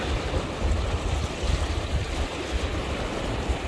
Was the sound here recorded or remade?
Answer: recorded